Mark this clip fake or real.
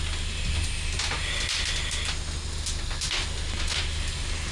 real